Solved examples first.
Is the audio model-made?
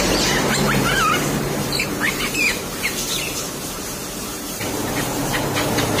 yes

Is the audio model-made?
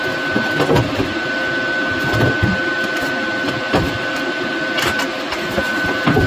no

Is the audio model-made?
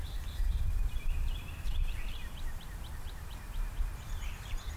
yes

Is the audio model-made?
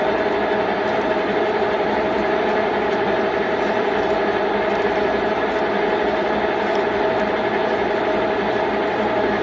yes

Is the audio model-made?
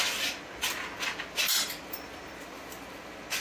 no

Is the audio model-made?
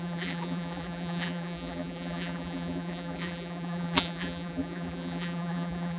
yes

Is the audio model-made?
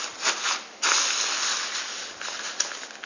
no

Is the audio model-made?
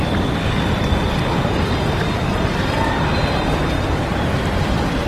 no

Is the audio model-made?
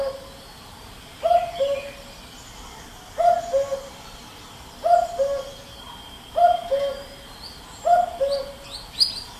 no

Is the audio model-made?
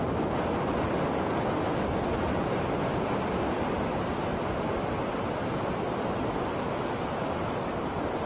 no